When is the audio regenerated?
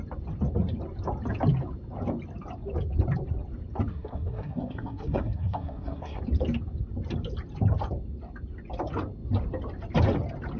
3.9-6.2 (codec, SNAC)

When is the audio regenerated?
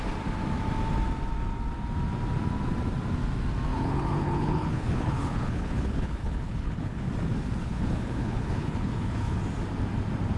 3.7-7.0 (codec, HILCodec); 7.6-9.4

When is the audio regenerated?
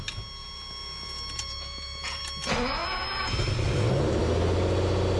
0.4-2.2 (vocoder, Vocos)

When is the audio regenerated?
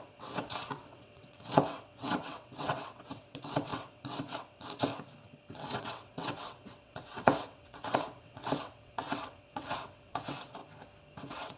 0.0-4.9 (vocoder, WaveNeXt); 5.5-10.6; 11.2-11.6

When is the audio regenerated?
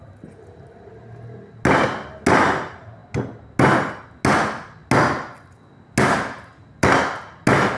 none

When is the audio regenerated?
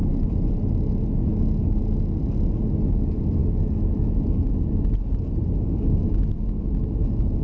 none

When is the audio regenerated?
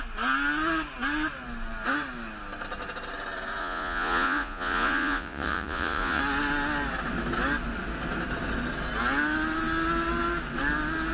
3.6-6.2 (vocoder, Vocos)